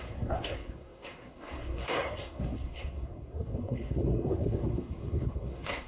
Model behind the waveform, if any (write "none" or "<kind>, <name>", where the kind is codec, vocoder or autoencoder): codec, SNAC